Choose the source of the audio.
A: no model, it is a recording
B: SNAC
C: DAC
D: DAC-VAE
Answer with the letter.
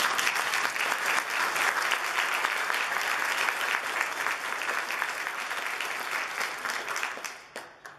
A